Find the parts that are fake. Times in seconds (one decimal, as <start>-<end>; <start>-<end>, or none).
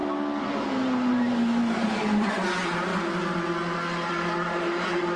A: 1.1-2.9; 4.1-5.2